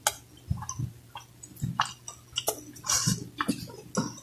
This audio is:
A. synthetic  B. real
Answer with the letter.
B